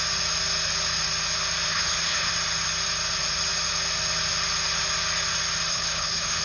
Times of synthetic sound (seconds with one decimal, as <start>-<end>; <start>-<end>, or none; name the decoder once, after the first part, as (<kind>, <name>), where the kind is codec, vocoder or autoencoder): 1.7-2.3 (codec, HILCodec); 5.7-6.4